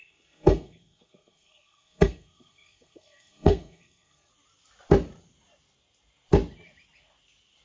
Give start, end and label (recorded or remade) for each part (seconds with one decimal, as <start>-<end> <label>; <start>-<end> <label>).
0.0-4.3 remade; 4.3-7.6 recorded